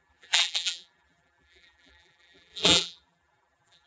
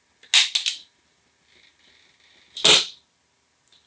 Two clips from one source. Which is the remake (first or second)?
first